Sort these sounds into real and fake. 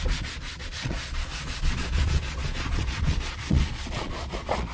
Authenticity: fake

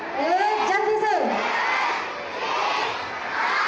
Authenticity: real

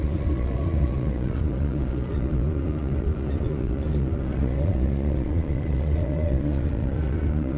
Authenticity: fake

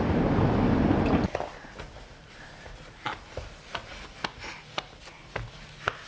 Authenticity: real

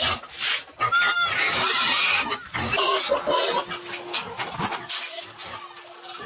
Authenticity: real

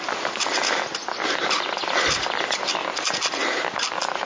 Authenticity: real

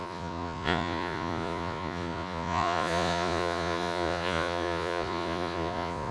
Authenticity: fake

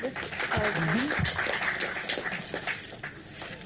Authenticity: real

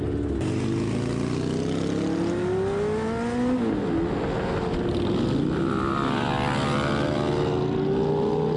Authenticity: real